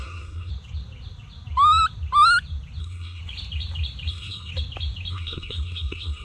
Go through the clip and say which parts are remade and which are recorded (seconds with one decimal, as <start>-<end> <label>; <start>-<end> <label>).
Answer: 0.0-0.5 remade; 0.5-2.8 recorded; 2.8-3.2 remade; 3.2-4.1 recorded; 4.1-4.5 remade; 4.5-5.1 recorded; 5.1-6.2 remade